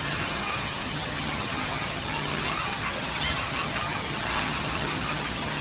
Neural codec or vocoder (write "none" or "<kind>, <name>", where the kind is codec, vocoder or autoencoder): vocoder, HiFi-GAN